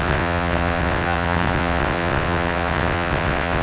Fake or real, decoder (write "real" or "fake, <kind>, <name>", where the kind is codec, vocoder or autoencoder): fake, vocoder, WaveNeXt